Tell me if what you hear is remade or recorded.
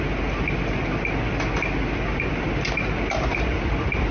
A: recorded